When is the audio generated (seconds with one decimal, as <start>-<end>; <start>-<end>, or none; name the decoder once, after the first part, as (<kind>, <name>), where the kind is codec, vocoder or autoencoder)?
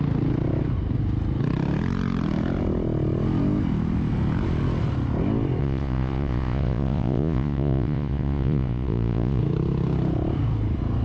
5.6-9.4 (vocoder, Vocos)